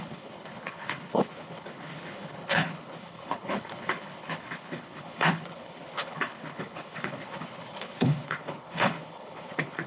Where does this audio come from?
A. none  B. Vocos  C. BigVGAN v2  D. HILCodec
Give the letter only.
D